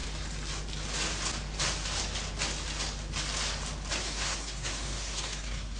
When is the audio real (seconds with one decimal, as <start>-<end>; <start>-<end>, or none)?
0.0-4.0